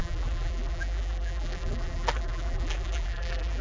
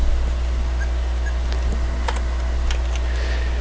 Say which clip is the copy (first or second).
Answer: first